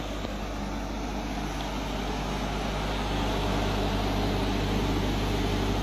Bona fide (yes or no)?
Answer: yes